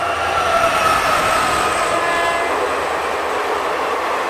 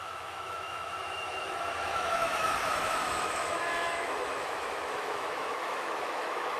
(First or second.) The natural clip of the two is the first